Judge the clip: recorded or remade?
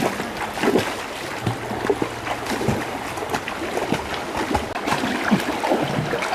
recorded